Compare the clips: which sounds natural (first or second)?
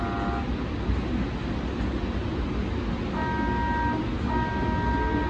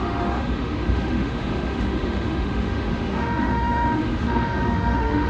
first